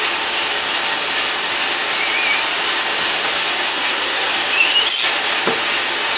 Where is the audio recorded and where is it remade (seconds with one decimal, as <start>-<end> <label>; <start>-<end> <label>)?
0.0-3.7 recorded; 3.7-4.3 remade; 4.3-6.2 recorded